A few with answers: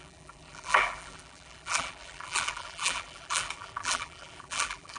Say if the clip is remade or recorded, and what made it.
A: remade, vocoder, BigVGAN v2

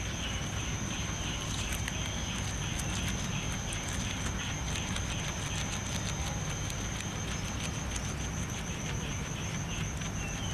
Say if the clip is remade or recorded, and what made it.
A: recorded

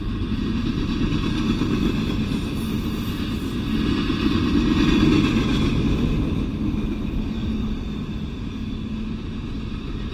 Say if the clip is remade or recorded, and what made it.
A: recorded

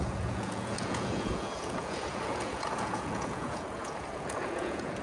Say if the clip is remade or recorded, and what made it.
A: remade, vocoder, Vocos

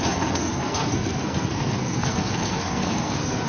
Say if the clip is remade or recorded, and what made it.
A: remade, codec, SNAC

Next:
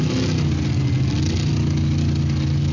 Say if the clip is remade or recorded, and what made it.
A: recorded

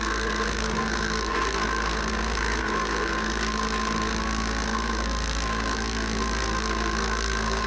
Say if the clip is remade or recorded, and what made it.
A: remade, codec, SNAC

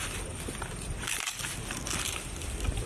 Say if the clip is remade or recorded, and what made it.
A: remade, vocoder, BigVGAN v2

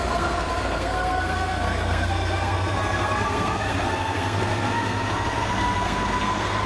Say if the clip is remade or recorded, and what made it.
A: remade, codec, SNAC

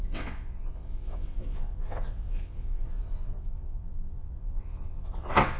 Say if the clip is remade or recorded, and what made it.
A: remade, vocoder, WaveNeXt